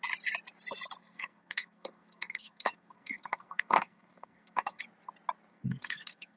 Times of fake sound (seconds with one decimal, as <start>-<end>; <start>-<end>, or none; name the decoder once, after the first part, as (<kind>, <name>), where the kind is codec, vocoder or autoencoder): 1.0-4.8 (codec, SNAC); 5.5-6.4